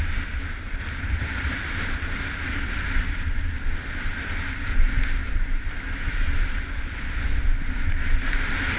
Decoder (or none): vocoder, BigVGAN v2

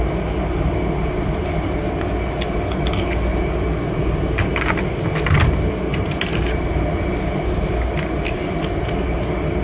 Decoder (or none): none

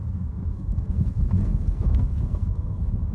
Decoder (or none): codec, SNAC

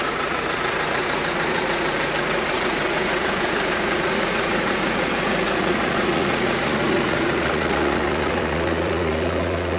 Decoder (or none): vocoder, Vocos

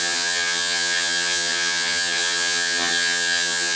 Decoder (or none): vocoder, HiFi-GAN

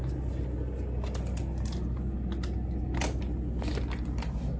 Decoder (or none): none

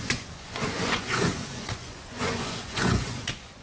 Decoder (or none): vocoder, Vocos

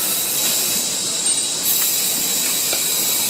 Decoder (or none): none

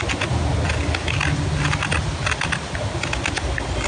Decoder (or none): none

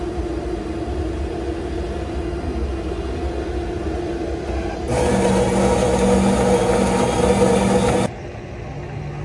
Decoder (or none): none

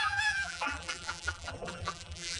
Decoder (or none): vocoder, BigVGAN v2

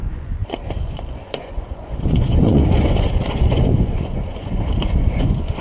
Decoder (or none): vocoder, Vocos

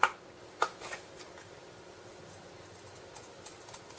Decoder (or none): none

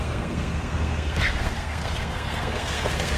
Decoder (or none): codec, SNAC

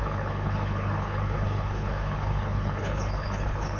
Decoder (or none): codec, HILCodec